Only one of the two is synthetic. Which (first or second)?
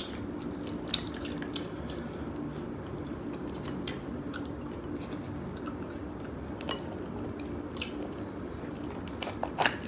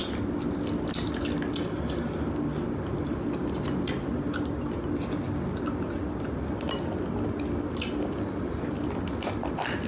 first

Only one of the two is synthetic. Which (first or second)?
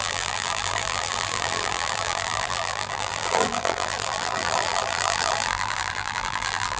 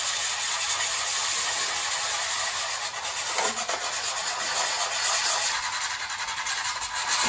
first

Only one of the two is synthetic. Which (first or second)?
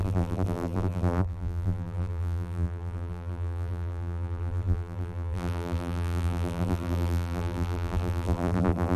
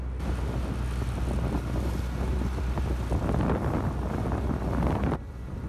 first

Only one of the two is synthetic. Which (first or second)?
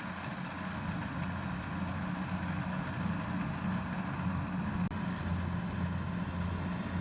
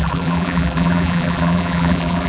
second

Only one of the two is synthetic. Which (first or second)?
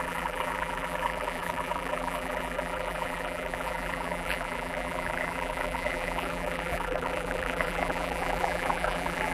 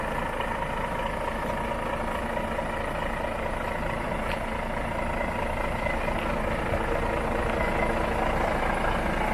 first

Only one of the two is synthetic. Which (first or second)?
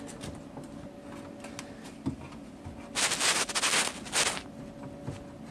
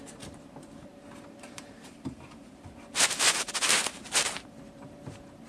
second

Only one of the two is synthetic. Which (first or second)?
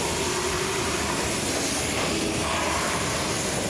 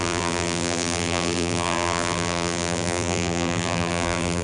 second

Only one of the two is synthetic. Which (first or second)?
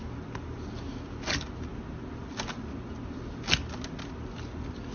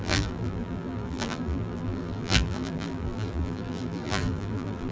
second